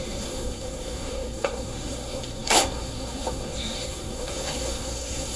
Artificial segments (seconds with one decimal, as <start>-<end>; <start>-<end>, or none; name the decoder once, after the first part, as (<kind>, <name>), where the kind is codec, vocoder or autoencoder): 0.0-5.4 (codec, SNAC)